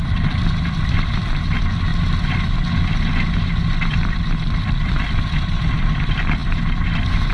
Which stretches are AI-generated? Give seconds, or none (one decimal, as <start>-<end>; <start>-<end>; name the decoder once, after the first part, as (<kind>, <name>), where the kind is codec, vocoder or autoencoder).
0.0-1.9 (vocoder, BigVGAN v2); 3.9-7.3